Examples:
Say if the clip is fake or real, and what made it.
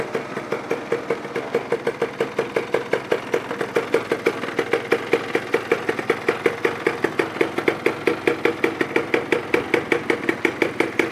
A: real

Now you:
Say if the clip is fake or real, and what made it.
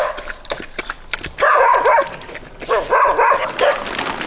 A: real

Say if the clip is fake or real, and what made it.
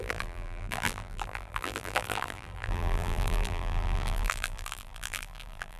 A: fake, vocoder, BigVGAN v2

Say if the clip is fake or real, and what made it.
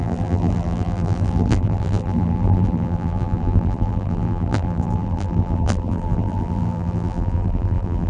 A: fake, vocoder, BigVGAN v2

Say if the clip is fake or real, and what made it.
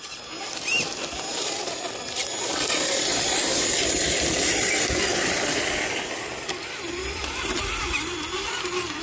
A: real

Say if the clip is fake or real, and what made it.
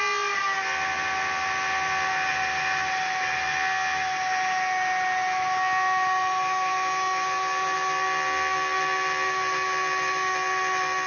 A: real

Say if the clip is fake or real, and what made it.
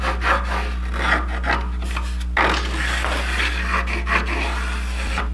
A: real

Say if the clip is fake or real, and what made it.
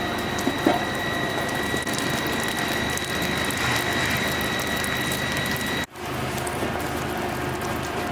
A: real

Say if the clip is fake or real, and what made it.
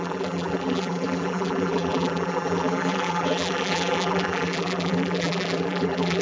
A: fake, vocoder, BigVGAN v2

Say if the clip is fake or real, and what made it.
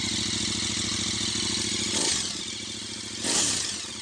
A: real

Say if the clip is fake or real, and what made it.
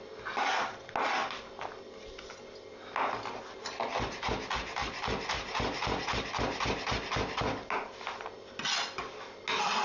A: real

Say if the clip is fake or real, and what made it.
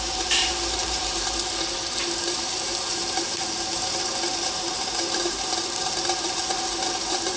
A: fake, vocoder, BigVGAN v2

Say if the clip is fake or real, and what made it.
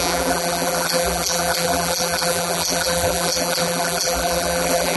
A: fake, vocoder, BigVGAN v2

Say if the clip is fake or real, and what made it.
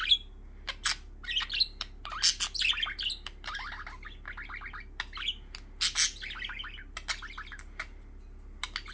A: real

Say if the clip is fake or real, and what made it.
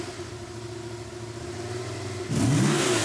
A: real